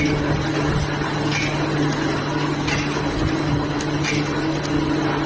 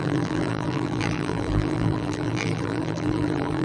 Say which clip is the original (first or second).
first